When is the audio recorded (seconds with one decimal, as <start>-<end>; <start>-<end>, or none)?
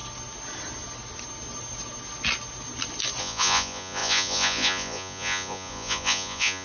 0.0-3.2